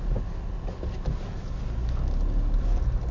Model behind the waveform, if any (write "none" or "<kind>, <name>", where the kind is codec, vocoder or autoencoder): none